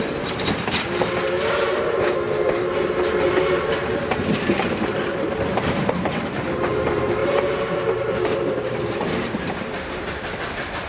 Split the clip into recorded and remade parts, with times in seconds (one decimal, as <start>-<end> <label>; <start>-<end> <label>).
0.0-10.9 remade